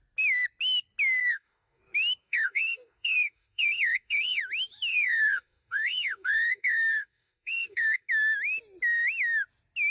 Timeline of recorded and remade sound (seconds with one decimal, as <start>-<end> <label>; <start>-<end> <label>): 0.0-1.2 recorded; 1.2-1.8 remade; 1.8-2.2 recorded; 2.2-4.4 remade; 4.4-4.9 recorded; 4.9-8.1 remade; 8.1-9.9 recorded